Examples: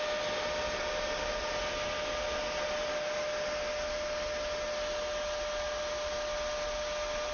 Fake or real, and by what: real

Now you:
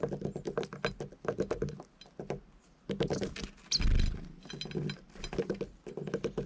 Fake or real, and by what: real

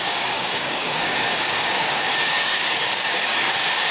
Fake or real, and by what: fake, codec, DAC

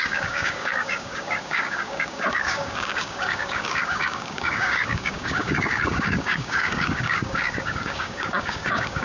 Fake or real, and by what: fake, codec, DAC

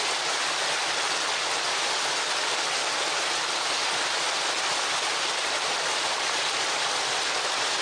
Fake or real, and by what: real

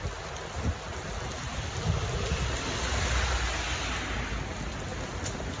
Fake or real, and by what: real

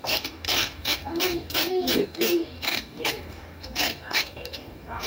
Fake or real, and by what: fake, codec, DAC